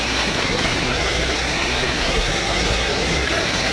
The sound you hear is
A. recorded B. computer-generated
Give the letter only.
B